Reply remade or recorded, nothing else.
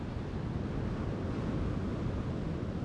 recorded